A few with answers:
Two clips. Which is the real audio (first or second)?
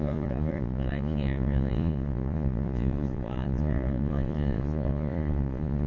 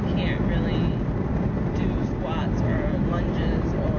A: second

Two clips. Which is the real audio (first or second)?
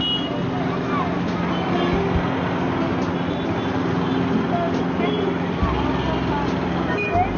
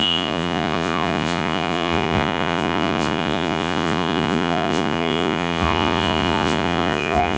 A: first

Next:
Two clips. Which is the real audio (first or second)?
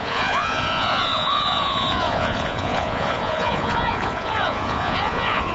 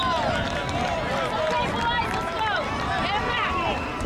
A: second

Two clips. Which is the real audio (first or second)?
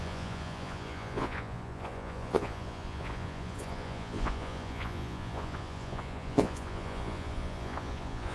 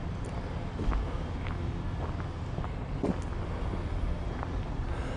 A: second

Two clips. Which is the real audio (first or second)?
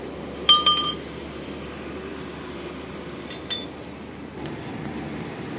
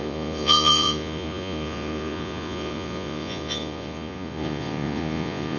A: first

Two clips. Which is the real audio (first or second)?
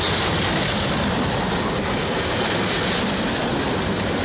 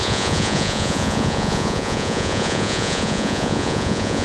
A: first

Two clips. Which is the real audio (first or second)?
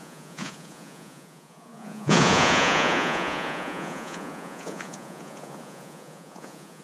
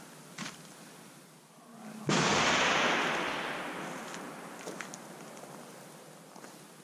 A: second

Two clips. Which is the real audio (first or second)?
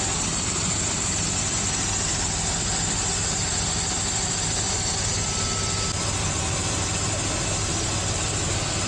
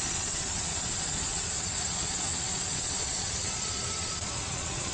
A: first